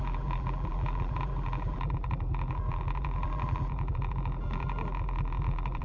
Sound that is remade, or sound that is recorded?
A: remade